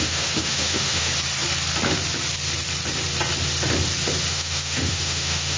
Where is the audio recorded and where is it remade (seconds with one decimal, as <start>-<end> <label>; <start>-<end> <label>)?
0.0-1.1 remade; 1.1-4.3 recorded; 4.3-5.6 remade